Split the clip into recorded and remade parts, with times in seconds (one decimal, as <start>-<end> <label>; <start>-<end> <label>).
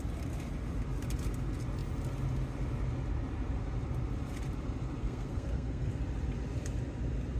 0.0-5.0 recorded; 5.0-5.9 remade; 5.9-7.4 recorded